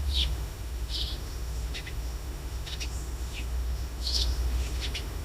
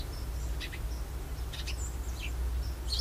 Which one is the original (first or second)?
second